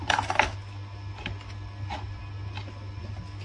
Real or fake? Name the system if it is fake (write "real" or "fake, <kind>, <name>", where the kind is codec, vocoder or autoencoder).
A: real